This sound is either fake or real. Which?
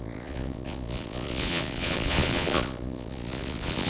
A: fake